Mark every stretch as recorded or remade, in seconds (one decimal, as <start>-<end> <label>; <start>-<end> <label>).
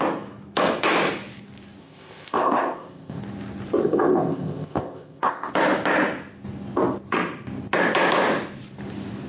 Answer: 0.0-1.8 recorded; 1.8-3.2 remade; 3.2-3.8 recorded; 3.8-5.5 remade; 5.5-9.3 recorded